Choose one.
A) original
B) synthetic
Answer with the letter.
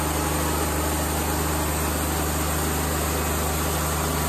A